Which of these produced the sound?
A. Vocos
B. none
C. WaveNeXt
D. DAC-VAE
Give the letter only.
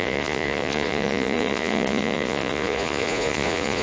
A